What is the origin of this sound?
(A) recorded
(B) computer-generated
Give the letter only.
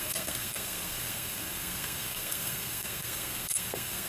B